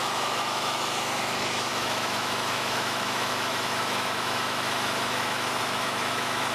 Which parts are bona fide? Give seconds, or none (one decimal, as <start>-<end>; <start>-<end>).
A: none